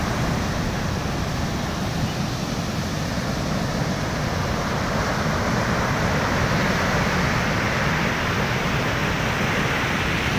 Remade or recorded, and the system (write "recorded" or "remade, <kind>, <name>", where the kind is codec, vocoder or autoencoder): recorded